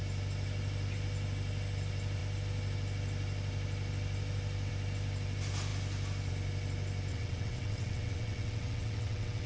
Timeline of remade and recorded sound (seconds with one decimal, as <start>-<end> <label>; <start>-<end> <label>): 0.0-7.1 recorded; 7.1-9.5 remade